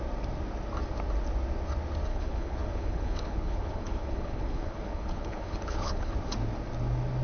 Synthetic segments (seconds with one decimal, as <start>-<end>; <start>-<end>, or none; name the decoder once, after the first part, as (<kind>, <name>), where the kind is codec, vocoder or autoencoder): 2.1-6.1 (codec, HILCodec)